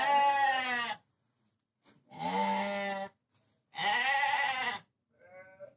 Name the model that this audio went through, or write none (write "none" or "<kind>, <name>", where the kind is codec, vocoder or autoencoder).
none